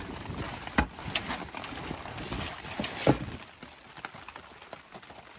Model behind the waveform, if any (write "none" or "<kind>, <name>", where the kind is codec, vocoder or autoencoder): none